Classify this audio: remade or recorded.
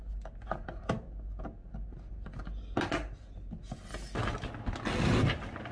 recorded